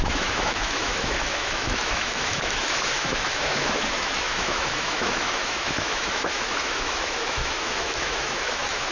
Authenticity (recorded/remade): remade